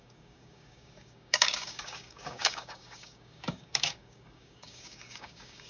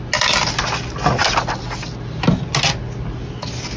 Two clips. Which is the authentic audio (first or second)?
second